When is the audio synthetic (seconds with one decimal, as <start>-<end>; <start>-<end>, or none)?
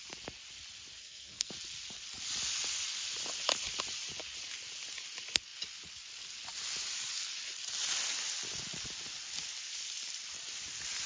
1.0-1.5